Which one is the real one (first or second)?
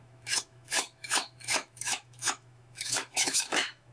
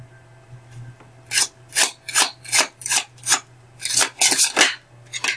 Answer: second